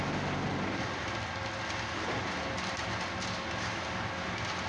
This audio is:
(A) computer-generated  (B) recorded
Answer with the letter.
B